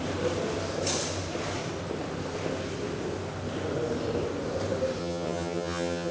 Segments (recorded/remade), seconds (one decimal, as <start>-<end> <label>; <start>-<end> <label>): 0.0-5.0 recorded; 5.0-6.1 remade